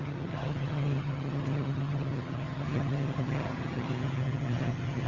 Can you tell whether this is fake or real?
fake